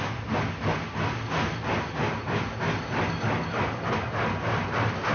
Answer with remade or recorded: recorded